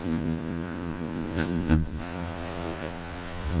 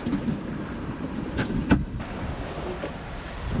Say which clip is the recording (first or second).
second